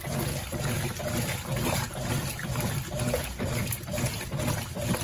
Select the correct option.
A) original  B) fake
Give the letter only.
A